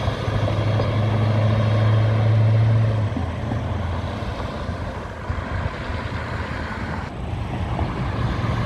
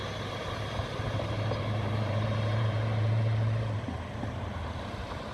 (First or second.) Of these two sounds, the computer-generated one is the second